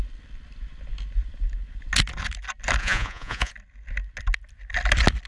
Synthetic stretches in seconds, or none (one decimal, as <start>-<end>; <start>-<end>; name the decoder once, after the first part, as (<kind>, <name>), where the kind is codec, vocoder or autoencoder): 2.8-3.5 (vocoder, Vocos)